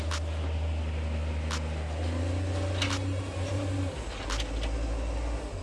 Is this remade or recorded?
recorded